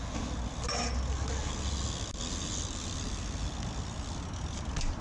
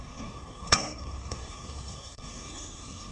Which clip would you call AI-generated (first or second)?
second